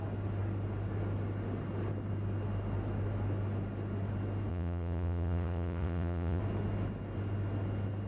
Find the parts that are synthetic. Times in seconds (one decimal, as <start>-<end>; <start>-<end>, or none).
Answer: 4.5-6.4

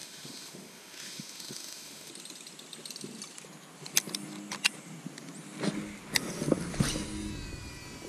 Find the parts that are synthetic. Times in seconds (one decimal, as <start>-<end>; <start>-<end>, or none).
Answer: 0.0-2.1

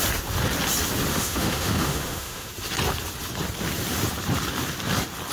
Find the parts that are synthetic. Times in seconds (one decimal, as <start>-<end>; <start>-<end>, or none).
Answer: 1.1-2.5

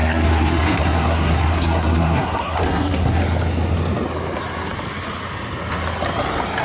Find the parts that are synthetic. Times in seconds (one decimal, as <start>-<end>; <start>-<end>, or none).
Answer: 0.0-3.2

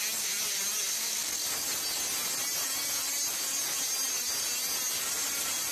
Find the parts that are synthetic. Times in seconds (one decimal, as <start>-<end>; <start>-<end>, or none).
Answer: none

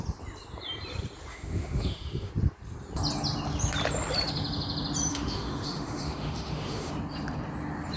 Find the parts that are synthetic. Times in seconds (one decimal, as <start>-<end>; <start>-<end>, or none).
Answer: 1.3-2.3; 5.1-6.9

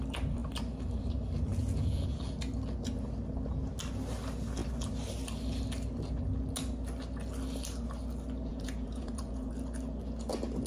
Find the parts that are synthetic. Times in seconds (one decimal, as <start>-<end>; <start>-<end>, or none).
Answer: 1.5-2.2; 8.5-9.5

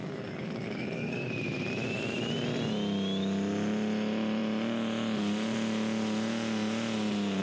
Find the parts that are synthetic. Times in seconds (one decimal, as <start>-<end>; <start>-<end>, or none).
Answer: 0.0-1.3